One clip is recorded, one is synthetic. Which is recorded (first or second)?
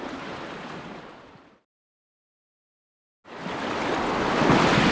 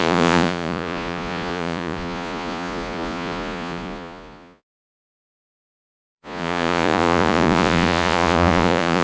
first